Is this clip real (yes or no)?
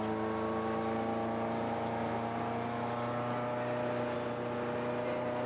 yes